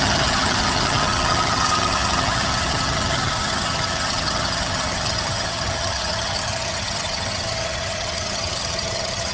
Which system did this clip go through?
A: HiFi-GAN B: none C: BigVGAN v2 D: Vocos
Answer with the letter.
A